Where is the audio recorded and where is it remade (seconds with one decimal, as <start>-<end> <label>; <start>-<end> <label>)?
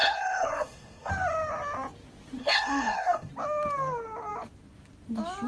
0.0-1.1 remade; 1.1-2.4 recorded; 2.4-3.3 remade; 3.3-5.5 recorded